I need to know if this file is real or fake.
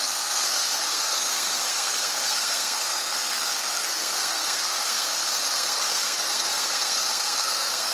fake